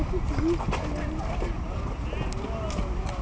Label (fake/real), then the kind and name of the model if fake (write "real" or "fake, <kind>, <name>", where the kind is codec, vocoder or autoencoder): real